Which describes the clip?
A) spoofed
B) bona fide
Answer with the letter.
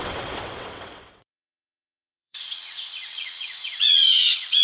A